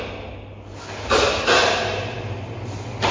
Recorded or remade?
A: recorded